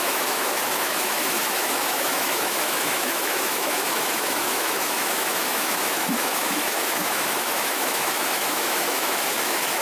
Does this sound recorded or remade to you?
remade